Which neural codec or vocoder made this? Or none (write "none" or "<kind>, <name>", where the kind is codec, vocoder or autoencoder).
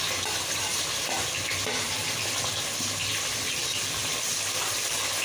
none